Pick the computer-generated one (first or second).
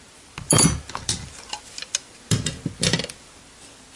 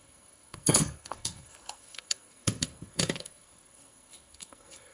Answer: second